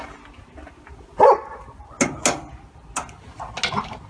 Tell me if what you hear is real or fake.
real